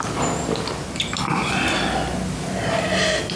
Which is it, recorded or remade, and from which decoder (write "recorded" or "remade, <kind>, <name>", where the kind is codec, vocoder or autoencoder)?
recorded